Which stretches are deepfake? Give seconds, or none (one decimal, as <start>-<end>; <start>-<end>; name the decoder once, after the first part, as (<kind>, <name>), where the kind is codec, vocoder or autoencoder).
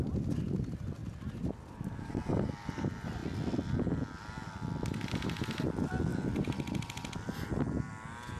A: none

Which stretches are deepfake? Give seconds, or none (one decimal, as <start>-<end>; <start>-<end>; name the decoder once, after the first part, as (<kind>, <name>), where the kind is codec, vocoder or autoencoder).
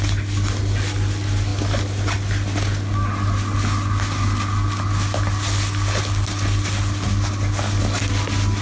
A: none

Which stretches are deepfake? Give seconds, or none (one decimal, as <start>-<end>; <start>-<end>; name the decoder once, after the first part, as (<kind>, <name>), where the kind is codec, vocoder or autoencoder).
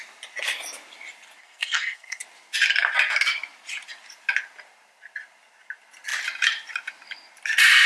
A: 1.4-2.2 (codec, SNAC)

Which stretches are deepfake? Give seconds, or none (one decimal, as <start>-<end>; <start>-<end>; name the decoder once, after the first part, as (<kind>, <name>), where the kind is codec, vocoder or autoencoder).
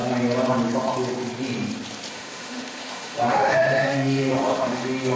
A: 2.1-5.2 (autoencoder, DAC-VAE)